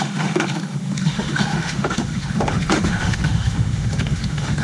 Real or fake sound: fake